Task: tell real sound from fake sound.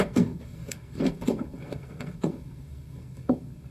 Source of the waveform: fake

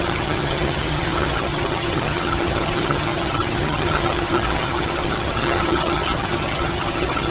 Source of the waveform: fake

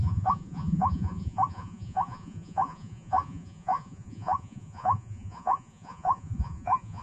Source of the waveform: fake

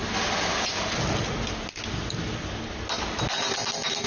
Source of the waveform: real